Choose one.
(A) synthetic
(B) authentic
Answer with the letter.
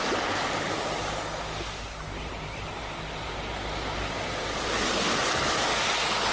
B